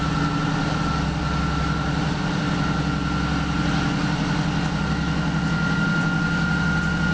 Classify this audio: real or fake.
real